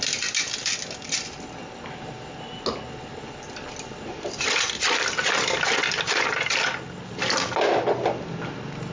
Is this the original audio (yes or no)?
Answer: yes